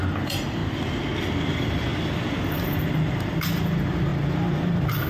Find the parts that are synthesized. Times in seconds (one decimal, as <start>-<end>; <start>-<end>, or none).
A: 0.0-0.6; 1.5-1.9; 2.5-5.1